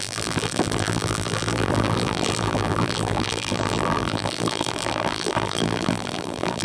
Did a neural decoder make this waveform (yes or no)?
yes